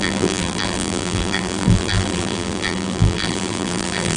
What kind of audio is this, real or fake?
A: fake